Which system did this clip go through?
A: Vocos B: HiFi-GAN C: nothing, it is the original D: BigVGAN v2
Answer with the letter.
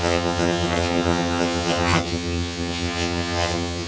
B